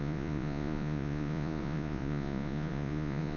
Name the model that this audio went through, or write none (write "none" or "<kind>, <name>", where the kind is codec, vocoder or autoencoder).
vocoder, Vocos